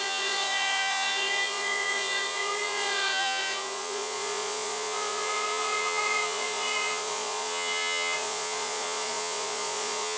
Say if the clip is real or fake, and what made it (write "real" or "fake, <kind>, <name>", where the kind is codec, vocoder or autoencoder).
fake, vocoder, Vocos